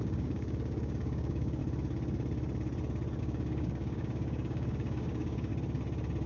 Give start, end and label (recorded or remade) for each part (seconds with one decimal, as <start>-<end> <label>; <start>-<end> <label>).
0.0-1.6 remade; 1.6-3.2 recorded; 3.2-5.5 remade; 5.5-6.3 recorded